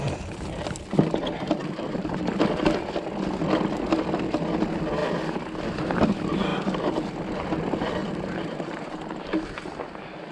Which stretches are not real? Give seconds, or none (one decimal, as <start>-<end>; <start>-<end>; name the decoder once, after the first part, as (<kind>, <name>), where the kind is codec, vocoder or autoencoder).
1.6-2.3 (vocoder, BigVGAN v2); 8.0-9.1